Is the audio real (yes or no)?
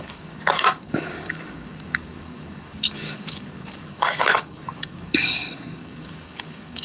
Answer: no